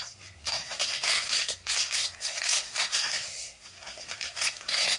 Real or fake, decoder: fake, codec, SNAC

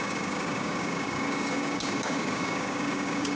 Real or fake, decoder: fake, codec, DAC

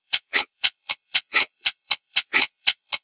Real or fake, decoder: fake, vocoder, Vocos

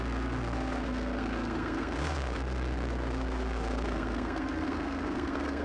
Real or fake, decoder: fake, codec, SNAC